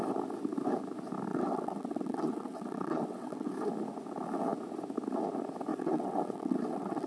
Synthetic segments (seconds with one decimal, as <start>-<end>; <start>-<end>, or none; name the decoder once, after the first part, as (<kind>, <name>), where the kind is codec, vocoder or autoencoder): 1.3-3.5 (vocoder, WaveNeXt); 5.7-7.1